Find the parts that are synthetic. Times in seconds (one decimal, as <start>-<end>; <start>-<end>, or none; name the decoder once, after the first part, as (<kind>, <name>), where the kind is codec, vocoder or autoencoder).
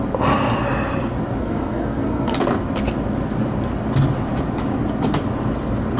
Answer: 1.4-2.4 (codec, SNAC)